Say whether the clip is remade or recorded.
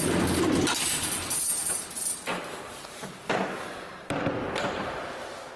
recorded